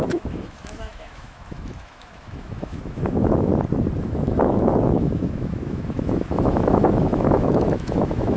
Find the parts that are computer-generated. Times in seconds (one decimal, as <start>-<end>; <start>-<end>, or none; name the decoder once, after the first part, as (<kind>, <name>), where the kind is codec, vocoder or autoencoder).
0.0-3.5 (autoencoder, DAC-VAE); 4.0-8.4